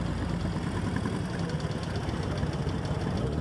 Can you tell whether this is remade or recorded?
recorded